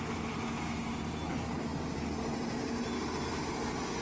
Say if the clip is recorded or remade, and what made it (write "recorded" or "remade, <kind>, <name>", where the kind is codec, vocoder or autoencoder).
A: recorded